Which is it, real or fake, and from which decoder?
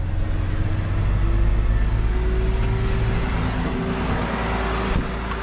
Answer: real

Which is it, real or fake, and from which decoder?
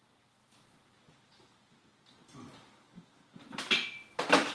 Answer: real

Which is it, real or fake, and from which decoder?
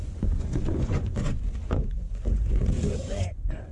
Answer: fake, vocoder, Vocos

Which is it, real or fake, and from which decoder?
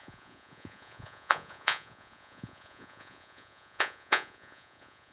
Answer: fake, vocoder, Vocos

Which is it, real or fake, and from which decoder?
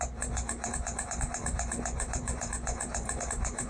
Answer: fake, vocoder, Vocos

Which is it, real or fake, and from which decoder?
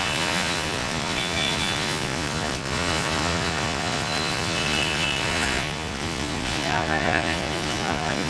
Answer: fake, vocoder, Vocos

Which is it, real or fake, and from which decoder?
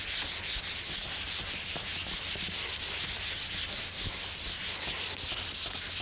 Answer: real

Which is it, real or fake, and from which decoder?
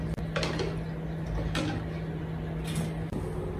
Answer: real